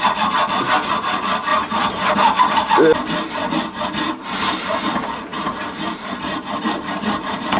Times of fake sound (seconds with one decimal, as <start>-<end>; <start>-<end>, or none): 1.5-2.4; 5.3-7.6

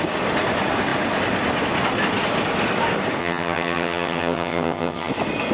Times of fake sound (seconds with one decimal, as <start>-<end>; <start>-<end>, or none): 3.2-5.1

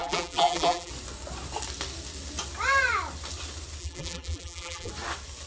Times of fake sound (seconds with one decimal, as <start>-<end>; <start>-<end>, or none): 0.0-0.9; 3.8-4.9

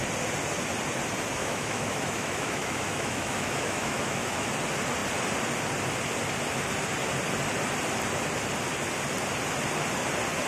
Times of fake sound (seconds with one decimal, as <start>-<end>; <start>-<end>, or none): 1.4-4.5

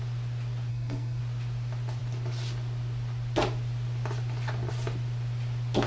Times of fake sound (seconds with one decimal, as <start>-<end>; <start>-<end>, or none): 0.7-1.2

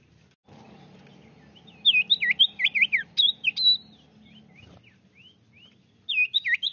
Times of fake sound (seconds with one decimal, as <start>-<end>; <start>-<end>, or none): none

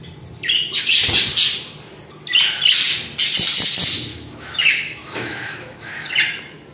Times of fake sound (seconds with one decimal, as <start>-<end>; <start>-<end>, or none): 4.1-5.9